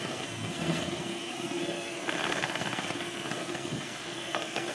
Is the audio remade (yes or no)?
yes